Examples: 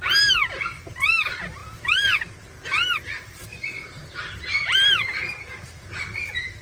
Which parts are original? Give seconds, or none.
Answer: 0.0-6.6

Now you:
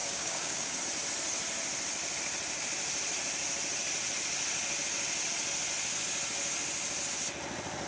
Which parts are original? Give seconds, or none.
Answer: 0.8-7.9

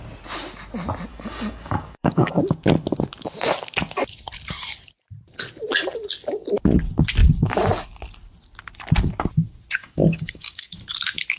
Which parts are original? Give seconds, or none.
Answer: 0.0-1.1; 2.3-9.8; 10.7-11.4